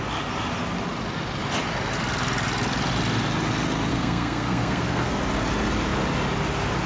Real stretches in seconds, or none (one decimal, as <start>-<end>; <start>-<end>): 0.0-3.9; 5.2-6.9